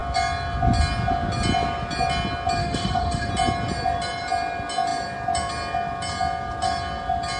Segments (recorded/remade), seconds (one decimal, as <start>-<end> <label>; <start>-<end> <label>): 0.0-2.6 recorded; 2.6-3.3 remade; 3.3-7.4 recorded